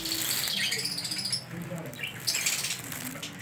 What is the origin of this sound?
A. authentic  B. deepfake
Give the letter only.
A